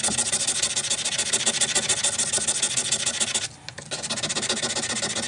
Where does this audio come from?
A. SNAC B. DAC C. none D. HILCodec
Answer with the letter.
C